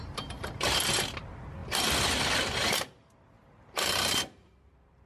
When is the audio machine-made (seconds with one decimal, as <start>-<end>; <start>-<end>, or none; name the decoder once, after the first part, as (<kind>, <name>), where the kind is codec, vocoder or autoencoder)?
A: none